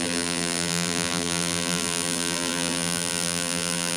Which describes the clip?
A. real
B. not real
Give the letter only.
B